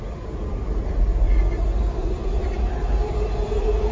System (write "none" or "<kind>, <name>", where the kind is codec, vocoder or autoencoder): none